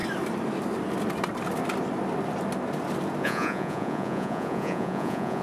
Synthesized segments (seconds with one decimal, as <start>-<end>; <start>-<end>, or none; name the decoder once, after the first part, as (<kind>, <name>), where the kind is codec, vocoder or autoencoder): 3.2-5.4 (vocoder, Vocos)